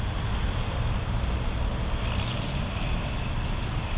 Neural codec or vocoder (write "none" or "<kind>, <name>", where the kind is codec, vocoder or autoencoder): none